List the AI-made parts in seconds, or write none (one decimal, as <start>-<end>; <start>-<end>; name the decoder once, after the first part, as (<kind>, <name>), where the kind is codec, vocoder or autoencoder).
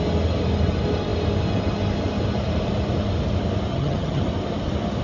3.7-4.2 (vocoder, HiFi-GAN)